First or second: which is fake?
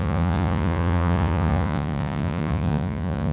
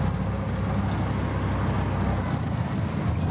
first